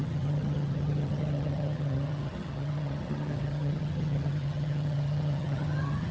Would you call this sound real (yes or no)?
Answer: no